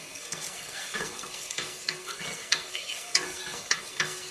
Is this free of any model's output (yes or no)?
no